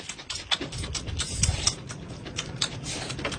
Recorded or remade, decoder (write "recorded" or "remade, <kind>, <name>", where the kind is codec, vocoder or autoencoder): recorded